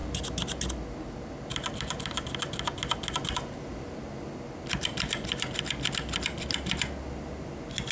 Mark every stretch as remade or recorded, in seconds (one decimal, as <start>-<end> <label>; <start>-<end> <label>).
0.0-1.5 recorded; 1.5-2.8 remade; 2.8-7.9 recorded